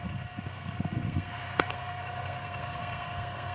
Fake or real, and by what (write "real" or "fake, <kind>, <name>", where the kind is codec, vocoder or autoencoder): fake, codec, SNAC